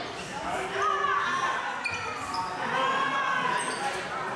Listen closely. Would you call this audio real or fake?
real